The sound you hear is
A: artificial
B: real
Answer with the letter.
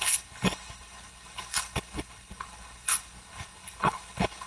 A